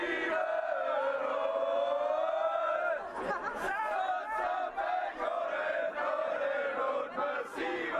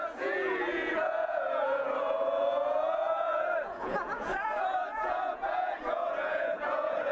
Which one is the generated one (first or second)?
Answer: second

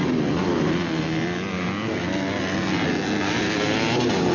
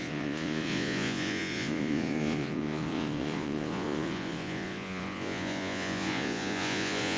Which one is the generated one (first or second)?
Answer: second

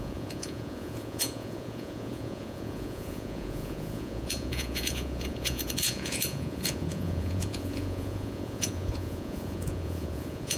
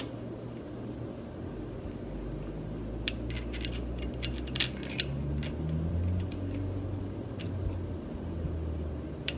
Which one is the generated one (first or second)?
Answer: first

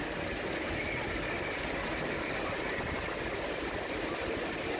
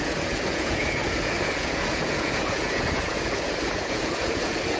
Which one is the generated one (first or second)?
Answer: second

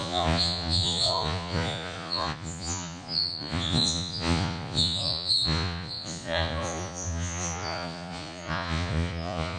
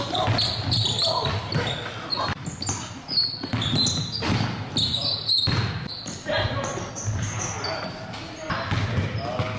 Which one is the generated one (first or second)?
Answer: first